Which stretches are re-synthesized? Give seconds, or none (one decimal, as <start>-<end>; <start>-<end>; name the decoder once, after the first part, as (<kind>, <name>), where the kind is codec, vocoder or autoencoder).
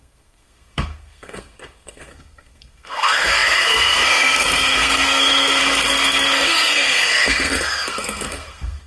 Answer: 0.0-8.9 (codec, SNAC)